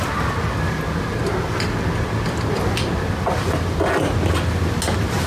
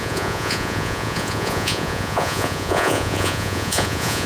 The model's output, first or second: second